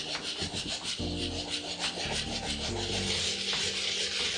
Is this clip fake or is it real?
real